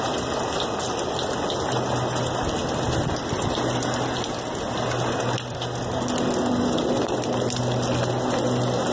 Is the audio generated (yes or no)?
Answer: no